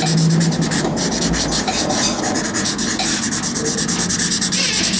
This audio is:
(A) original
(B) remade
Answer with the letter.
A